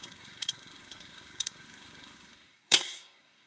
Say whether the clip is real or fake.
fake